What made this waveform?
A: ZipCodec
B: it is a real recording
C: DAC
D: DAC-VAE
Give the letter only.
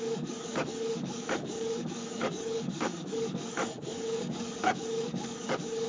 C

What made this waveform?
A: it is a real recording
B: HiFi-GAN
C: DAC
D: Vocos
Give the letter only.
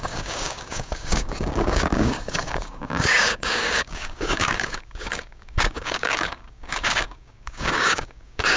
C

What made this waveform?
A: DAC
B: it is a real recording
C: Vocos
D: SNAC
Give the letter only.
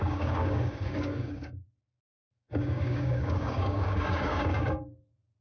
A